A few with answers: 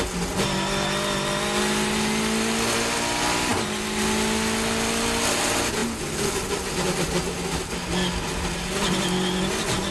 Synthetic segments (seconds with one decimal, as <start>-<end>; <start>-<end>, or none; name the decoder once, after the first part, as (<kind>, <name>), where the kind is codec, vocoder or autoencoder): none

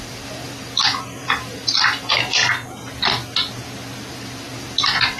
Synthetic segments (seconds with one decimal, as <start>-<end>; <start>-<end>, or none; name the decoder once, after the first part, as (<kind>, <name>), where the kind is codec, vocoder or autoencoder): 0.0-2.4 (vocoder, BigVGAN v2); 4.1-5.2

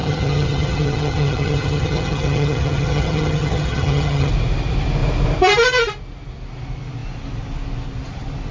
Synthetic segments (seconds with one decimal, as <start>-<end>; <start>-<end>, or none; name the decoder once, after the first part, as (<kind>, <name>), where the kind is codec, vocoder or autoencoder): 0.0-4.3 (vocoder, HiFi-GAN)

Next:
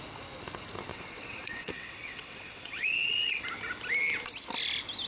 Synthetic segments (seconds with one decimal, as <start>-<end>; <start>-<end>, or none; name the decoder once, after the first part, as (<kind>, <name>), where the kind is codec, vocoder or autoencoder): 0.9-3.4 (vocoder, WaveNeXt)

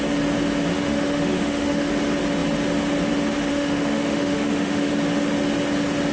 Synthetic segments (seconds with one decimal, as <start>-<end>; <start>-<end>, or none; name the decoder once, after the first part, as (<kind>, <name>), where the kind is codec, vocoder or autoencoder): 0.7-1.9 (autoencoder, DAC-VAE); 3.5-4.9

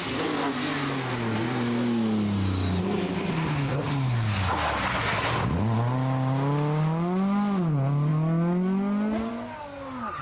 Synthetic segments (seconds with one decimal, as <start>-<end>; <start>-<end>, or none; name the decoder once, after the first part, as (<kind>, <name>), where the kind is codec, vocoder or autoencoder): none

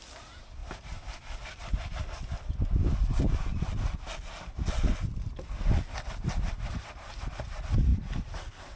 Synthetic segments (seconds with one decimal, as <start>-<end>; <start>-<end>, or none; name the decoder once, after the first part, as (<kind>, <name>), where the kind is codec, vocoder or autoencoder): none